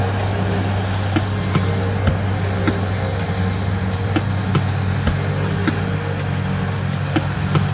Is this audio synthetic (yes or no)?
no